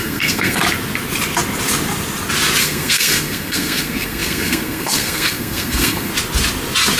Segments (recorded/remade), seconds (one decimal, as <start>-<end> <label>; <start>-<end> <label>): 0.0-0.6 remade; 0.6-2.6 recorded; 2.6-6.1 remade; 6.1-7.0 recorded